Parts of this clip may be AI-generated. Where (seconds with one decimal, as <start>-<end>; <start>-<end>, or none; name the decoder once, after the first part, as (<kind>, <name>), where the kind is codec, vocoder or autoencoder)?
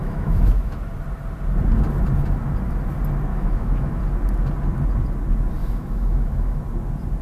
0.0-0.8 (autoencoder, DAC-VAE); 3.3-4.0; 5.6-6.6